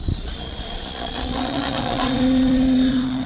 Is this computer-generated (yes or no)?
yes